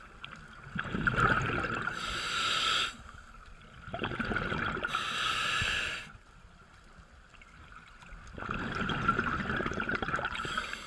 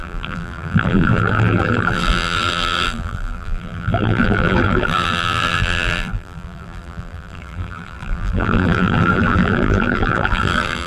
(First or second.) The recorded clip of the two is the first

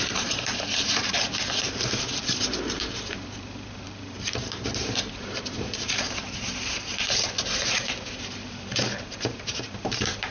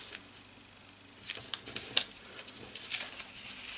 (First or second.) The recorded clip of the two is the second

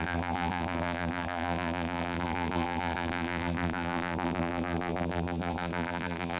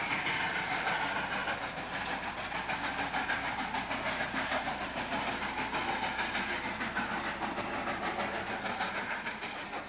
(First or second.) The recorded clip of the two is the second